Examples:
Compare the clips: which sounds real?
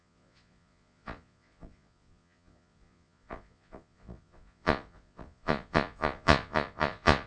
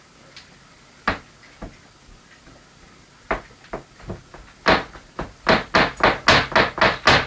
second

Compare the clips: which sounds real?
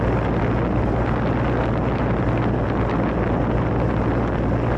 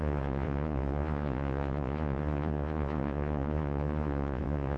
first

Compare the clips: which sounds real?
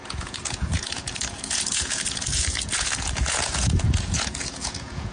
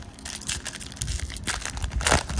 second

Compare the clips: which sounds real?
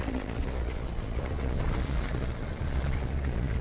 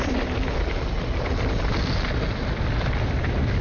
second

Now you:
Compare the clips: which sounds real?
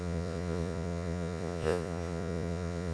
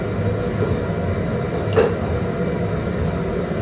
second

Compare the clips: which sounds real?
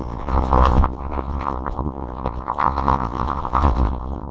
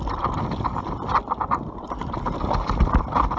second